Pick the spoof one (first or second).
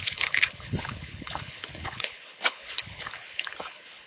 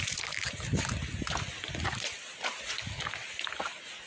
first